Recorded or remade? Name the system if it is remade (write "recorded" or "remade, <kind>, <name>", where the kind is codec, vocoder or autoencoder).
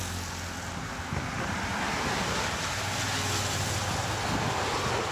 recorded